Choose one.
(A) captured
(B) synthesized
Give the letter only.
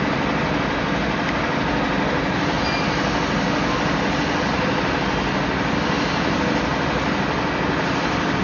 A